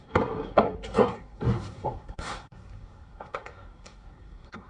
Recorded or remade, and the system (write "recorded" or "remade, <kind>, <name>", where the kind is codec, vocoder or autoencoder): remade, codec, SNAC